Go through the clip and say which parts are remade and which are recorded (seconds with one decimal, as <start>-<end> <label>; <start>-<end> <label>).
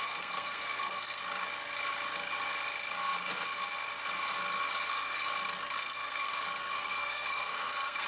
0.0-1.2 remade; 1.2-5.8 recorded; 5.8-6.3 remade; 6.3-6.8 recorded; 6.8-8.1 remade